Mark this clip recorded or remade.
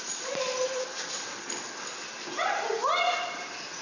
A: recorded